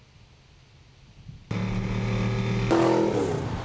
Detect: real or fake real